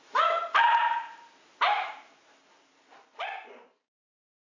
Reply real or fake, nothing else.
fake